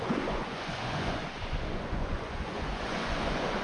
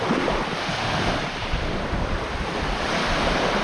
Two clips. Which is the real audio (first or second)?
second